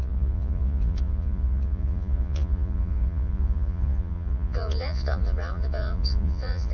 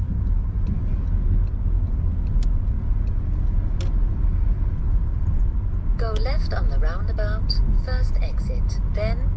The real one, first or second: second